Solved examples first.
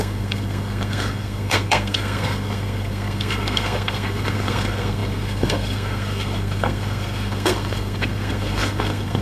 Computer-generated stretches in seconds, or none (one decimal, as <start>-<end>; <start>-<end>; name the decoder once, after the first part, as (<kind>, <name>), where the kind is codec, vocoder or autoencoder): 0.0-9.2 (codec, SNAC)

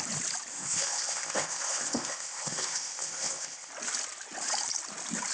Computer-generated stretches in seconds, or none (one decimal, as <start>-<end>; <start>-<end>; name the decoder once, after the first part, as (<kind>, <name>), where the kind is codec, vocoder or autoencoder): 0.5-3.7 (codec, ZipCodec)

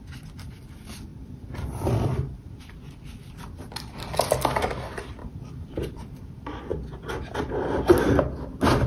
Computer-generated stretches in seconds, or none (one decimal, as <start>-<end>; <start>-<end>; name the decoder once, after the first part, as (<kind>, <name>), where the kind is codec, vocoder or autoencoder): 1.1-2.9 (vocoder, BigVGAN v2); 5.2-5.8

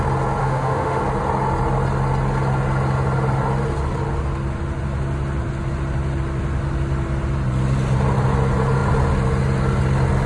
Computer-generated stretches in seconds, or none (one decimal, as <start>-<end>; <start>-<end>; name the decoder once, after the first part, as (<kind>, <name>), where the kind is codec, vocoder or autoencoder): 0.4-1.0 (autoencoder, DAC-VAE)